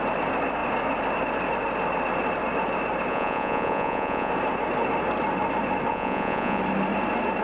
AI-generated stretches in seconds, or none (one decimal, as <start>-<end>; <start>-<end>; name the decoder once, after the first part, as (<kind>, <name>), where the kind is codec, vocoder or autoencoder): 3.1-4.3 (vocoder, Vocos); 5.9-6.6